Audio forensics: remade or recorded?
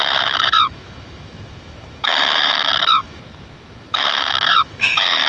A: remade